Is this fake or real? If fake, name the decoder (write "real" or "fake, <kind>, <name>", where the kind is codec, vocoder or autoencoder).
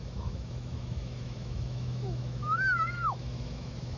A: fake, autoencoder, DAC-VAE